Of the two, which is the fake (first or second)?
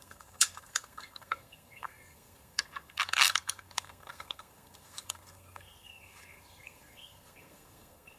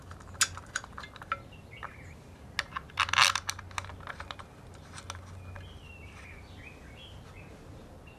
first